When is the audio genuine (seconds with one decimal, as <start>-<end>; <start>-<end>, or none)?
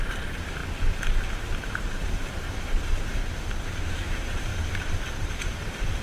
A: 0.6-2.0; 3.2-3.9; 4.5-5.6